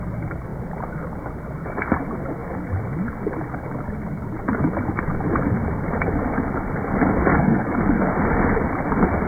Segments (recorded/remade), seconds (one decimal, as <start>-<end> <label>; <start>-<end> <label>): 0.0-7.3 recorded; 7.3-8.0 remade; 8.0-9.3 recorded